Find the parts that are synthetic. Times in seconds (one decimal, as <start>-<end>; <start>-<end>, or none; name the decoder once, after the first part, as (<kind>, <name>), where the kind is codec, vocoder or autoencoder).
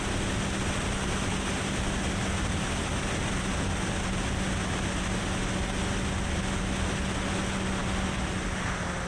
none